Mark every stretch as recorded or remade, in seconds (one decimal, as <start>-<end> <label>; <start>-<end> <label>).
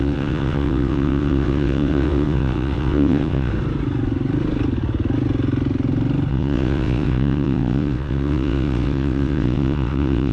0.0-3.5 remade; 3.5-6.3 recorded; 6.3-10.3 remade